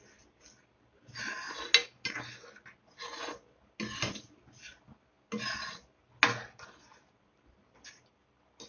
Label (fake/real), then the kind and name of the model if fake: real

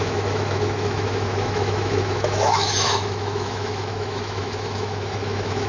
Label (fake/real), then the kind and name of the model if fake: fake, autoencoder, DAC-VAE